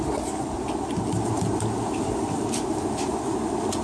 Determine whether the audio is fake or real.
real